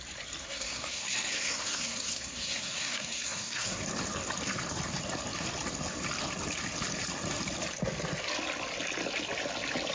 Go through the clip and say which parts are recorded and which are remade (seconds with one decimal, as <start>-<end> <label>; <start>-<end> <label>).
0.0-0.4 recorded; 0.4-3.8 remade; 3.8-9.9 recorded